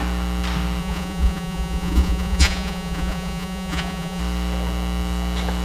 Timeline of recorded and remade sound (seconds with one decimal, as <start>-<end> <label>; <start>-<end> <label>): 0.0-0.8 recorded; 0.8-4.2 remade; 4.2-5.6 recorded